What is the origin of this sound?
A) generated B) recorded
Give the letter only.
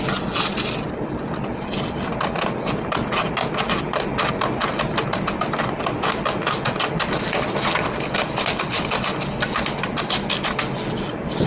B